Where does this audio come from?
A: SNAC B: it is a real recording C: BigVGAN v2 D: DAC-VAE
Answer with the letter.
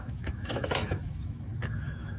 D